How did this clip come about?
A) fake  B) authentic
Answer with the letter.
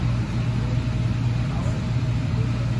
B